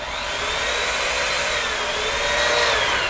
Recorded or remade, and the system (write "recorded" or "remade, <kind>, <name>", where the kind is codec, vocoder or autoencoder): recorded